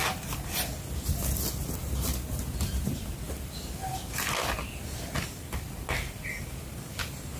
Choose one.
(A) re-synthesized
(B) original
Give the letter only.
B